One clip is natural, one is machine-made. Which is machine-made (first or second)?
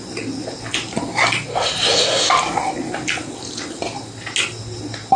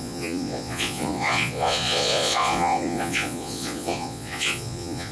second